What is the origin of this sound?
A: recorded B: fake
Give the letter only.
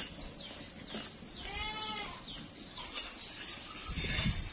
A